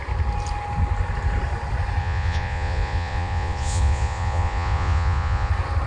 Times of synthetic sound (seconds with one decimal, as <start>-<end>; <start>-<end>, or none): 2.0-5.5

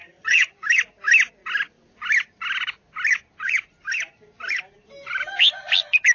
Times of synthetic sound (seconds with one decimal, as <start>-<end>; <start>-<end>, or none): 0.0-0.5

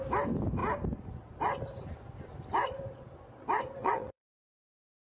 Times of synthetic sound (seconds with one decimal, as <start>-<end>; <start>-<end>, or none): 3.8-5.0

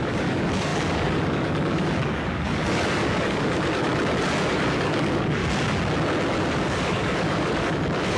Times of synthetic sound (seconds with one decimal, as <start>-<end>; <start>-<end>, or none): 0.0-3.9; 4.5-5.4; 6.4-8.2

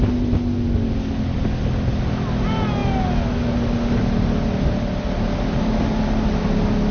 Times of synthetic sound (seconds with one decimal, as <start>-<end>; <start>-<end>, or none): none

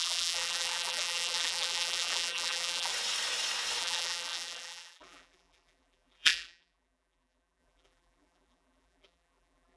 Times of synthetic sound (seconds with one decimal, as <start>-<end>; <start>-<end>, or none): 0.0-2.9; 3.8-9.8

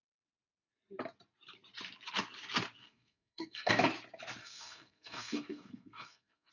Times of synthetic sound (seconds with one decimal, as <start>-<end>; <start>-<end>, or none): 2.8-3.7; 4.4-6.5